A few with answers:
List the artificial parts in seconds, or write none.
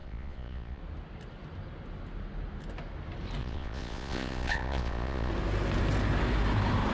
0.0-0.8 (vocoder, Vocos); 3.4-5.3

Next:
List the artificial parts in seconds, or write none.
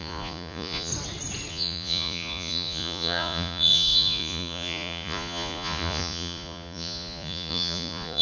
0.0-0.9 (vocoder, Vocos); 1.5-8.2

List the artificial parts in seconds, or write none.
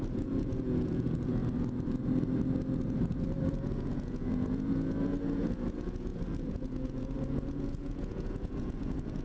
0.0-1.4 (vocoder, Vocos); 3.2-9.2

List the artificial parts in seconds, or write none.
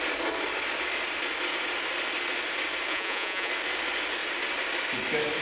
2.9-3.5 (vocoder, Vocos)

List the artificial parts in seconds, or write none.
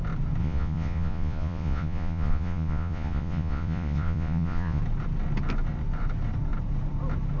0.4-4.8 (vocoder, Vocos)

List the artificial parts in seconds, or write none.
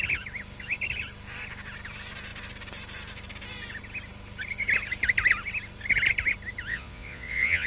6.7-7.7 (vocoder, Vocos)